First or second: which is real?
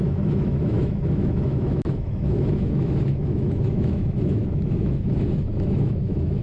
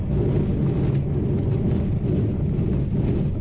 second